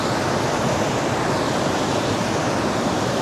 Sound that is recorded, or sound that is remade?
recorded